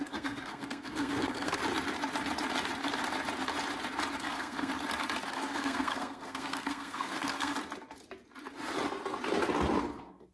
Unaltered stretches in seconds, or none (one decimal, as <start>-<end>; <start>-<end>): 1.6-4.2; 4.7-5.3; 7.5-9.8